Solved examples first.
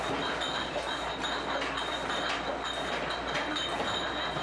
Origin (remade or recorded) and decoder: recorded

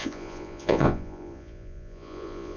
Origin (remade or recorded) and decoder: remade, vocoder, Vocos